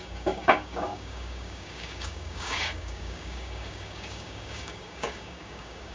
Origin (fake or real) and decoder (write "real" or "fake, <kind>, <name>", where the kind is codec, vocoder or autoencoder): fake, codec, DAC